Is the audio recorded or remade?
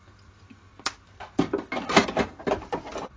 recorded